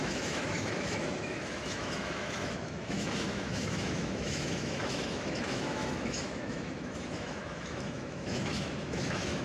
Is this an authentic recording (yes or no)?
no